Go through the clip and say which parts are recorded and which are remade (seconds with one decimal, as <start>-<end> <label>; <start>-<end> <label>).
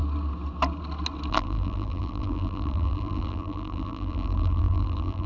0.0-1.3 recorded; 1.3-5.3 remade